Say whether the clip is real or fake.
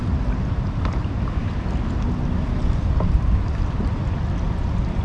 real